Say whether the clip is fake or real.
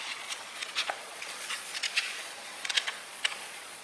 fake